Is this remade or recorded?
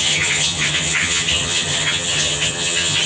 remade